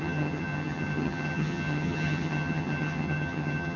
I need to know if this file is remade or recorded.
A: remade